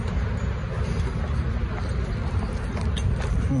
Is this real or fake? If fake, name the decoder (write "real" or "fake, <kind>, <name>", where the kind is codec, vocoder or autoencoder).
real